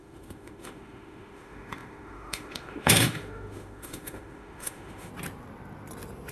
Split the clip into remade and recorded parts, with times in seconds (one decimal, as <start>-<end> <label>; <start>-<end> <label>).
0.0-5.1 remade; 5.1-6.3 recorded